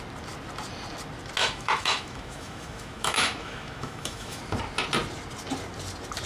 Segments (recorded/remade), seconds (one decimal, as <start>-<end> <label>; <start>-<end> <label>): 0.0-1.4 recorded; 1.4-4.4 remade; 4.4-6.3 recorded